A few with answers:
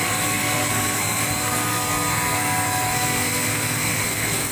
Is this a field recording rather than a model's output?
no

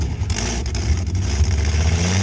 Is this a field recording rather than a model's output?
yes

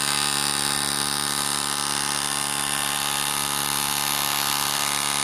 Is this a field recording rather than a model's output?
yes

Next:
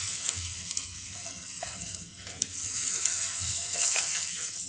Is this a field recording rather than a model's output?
no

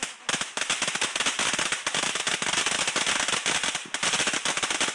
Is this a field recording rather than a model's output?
yes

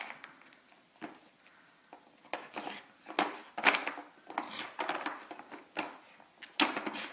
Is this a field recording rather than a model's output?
yes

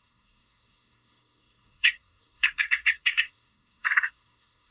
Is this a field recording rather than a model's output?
no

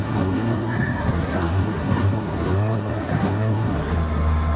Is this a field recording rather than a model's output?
no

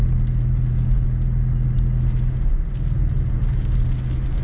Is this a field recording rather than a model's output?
yes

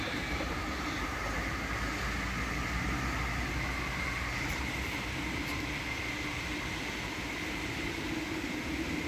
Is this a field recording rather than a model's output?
yes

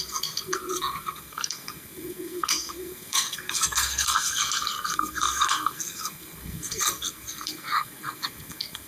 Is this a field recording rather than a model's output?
no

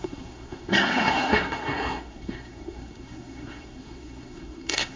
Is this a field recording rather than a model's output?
no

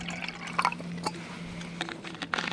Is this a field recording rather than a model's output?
yes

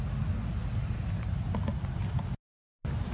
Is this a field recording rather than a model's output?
yes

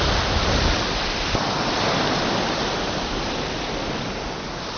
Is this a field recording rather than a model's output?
yes